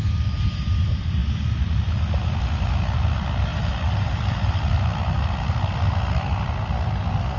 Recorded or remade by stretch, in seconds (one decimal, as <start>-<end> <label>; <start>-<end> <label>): 0.0-3.5 recorded; 3.5-4.6 remade; 4.6-7.4 recorded